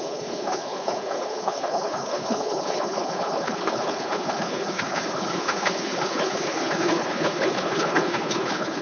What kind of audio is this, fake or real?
fake